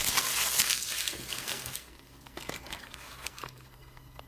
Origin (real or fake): fake